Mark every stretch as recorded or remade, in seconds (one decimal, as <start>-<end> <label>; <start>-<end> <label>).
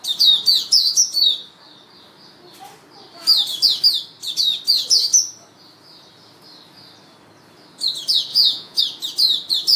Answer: 0.0-8.3 recorded; 8.3-8.8 remade; 8.8-9.8 recorded